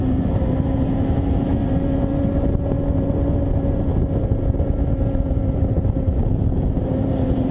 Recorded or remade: remade